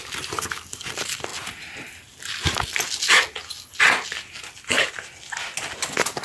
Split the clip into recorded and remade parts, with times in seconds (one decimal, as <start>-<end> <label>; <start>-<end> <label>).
0.0-6.2 recorded